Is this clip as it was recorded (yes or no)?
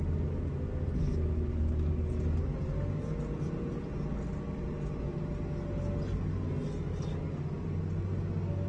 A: yes